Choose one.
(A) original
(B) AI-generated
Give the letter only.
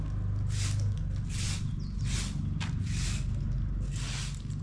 A